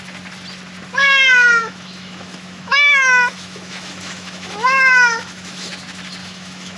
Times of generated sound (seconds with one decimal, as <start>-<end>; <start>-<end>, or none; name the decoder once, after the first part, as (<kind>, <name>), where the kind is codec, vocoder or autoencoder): 1.6-5.7 (autoencoder, DAC-VAE); 6.2-6.8